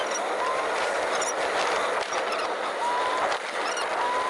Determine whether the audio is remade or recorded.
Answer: recorded